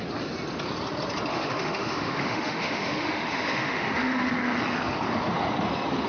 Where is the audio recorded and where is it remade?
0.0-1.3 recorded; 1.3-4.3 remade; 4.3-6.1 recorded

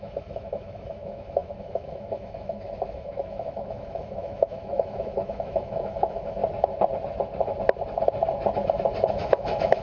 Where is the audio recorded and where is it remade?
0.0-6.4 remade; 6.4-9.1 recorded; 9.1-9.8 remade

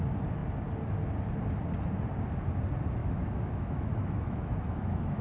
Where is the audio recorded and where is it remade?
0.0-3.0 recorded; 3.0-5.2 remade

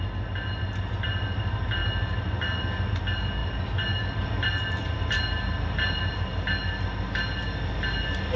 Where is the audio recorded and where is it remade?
0.0-8.4 recorded

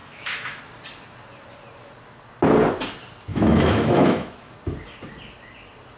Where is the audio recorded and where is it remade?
0.0-0.6 remade; 0.6-3.3 recorded; 3.3-4.5 remade; 4.5-6.0 recorded

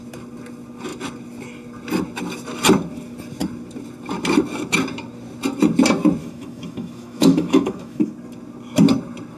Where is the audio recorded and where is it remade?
0.0-6.2 recorded; 6.2-8.1 remade; 8.1-9.4 recorded